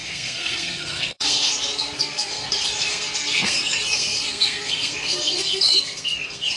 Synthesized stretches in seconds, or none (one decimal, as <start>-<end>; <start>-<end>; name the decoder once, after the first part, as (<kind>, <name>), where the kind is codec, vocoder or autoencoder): 0.0-6.6 (codec, SNAC)